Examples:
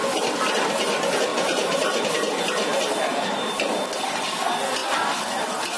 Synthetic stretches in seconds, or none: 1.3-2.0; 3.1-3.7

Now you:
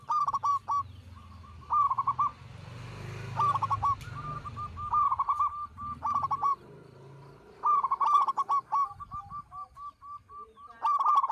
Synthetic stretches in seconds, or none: none

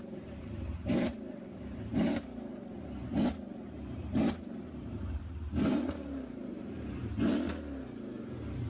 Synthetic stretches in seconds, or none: 0.0-2.5; 4.0-7.0

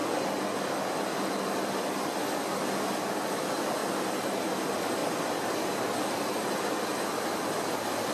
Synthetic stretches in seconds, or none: none